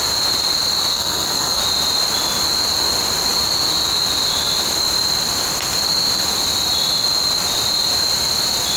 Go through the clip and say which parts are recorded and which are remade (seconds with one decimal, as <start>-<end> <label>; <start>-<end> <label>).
0.0-0.9 recorded; 0.9-1.6 remade; 1.6-8.8 recorded